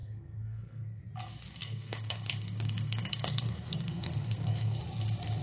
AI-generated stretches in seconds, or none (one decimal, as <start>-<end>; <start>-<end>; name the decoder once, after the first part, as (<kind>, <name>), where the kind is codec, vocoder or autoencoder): 0.0-1.0 (codec, SNAC); 1.6-4.8